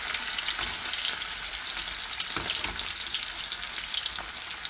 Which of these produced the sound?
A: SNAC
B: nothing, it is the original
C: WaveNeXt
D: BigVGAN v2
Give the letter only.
B